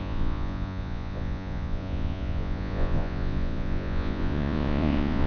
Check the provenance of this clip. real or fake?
fake